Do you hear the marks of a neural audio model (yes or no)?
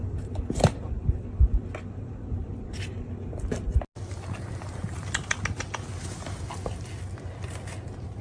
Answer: no